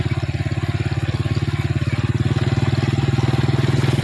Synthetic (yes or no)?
no